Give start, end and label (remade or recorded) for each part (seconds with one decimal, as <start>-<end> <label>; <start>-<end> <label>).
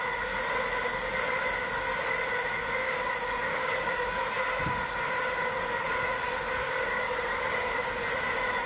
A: 0.0-3.4 recorded; 3.4-4.2 remade; 4.2-6.6 recorded; 6.6-7.9 remade; 7.9-8.7 recorded